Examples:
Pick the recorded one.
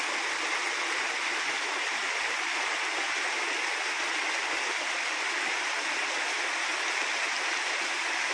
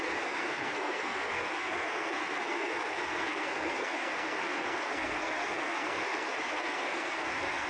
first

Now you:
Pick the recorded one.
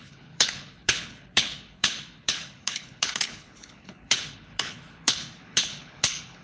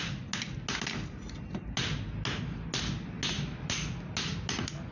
second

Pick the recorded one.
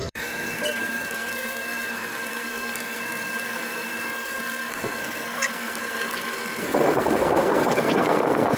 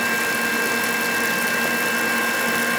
second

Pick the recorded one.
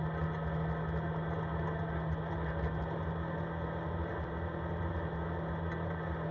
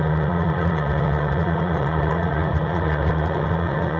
first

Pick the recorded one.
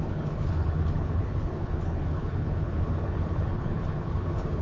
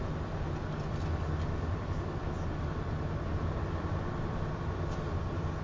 second